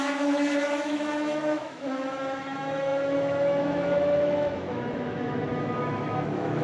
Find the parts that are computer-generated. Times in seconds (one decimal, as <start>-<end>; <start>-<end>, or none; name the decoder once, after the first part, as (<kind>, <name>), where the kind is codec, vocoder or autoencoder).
0.0-6.6 (autoencoder, DAC-VAE)